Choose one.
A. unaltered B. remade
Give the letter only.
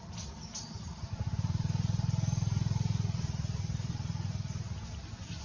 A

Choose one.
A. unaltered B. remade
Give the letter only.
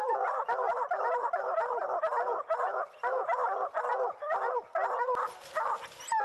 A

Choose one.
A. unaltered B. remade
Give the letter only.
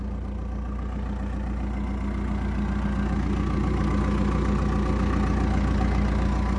A